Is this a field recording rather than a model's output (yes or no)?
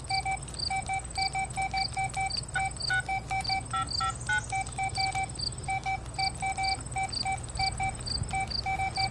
yes